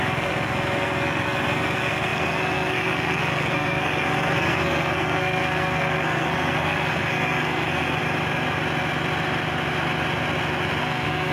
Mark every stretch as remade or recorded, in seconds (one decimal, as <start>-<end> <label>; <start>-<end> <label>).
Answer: 0.0-8.0 remade; 8.0-10.8 recorded; 10.8-11.3 remade